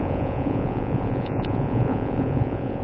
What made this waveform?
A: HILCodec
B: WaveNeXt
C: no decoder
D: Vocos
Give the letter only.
D